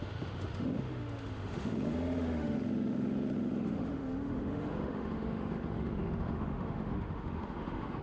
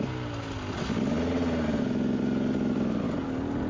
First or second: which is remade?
first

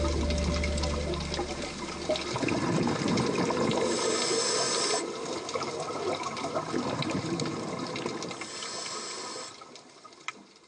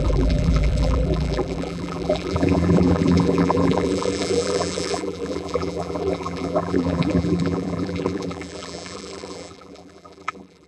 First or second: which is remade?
second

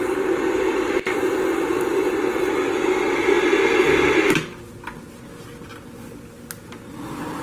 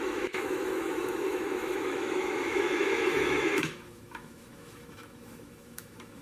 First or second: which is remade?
second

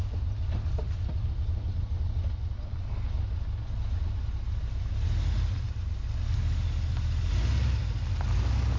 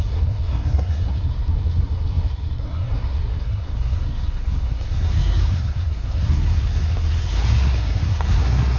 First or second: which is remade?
second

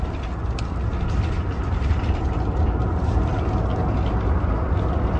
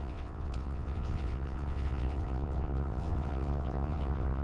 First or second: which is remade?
second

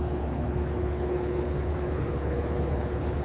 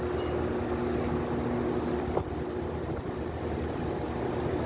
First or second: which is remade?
first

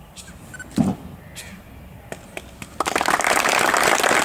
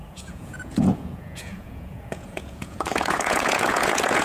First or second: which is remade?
second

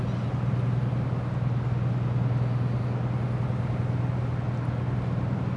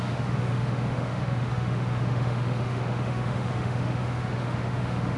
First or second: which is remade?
second